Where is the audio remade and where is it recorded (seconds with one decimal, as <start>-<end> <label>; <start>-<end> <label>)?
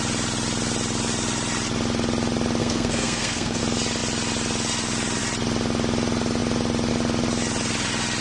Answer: 0.0-2.6 recorded; 2.6-3.6 remade; 3.6-8.2 recorded